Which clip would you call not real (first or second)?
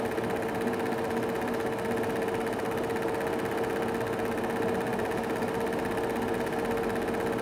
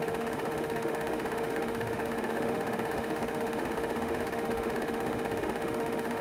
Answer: second